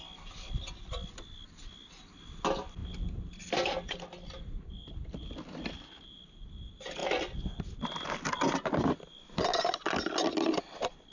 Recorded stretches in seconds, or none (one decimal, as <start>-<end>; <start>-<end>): 0.0-11.1